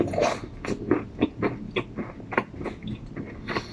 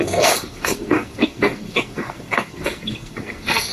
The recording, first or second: first